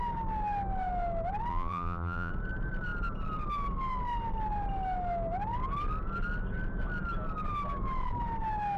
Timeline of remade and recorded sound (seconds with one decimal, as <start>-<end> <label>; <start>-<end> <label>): 0.0-1.5 recorded; 1.5-2.3 remade; 2.3-8.8 recorded